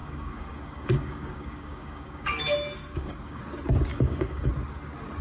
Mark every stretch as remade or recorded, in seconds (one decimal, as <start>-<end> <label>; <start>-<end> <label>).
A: 0.0-2.4 remade; 2.4-2.8 recorded; 2.8-3.4 remade; 3.4-3.9 recorded; 3.9-4.5 remade; 4.5-5.2 recorded

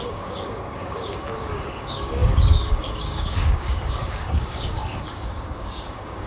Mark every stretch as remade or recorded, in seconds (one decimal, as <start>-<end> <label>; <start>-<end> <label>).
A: 0.0-6.3 remade

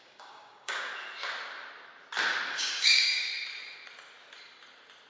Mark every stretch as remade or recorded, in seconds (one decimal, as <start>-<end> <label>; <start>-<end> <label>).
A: 0.0-0.9 remade; 0.9-2.5 recorded; 2.5-3.3 remade; 3.3-5.1 recorded

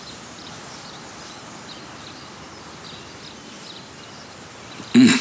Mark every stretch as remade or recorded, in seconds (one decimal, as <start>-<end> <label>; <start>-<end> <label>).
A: 0.0-5.2 recorded

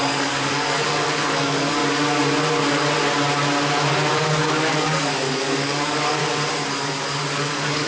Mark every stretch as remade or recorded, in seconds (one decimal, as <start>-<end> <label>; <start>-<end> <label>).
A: 0.0-1.8 remade; 1.8-4.1 recorded; 4.1-6.2 remade; 6.2-7.3 recorded; 7.3-7.9 remade